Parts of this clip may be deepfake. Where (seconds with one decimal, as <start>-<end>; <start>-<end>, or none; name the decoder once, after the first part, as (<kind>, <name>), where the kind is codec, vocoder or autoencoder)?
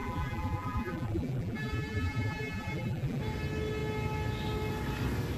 0.0-3.2 (vocoder, BigVGAN v2)